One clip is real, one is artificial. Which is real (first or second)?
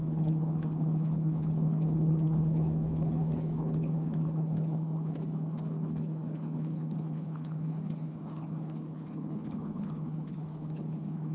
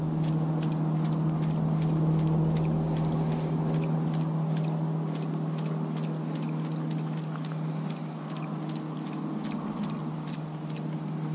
second